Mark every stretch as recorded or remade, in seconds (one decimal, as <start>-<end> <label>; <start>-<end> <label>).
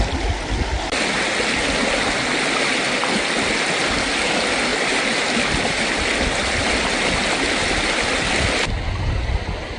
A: 0.0-9.8 recorded